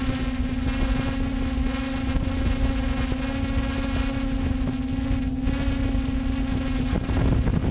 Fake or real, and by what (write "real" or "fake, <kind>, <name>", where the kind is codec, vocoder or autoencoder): real